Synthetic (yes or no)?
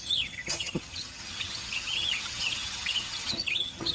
yes